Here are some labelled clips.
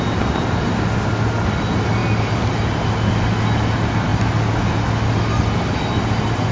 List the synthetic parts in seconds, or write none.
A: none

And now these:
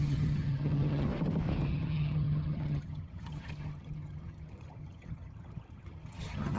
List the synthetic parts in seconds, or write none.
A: 0.0-1.1 (vocoder, HiFi-GAN); 1.7-6.6